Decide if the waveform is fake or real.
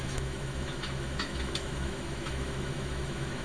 fake